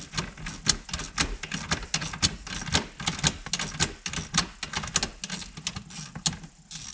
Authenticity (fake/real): real